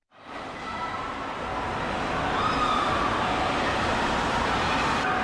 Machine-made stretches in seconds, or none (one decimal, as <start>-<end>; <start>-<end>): none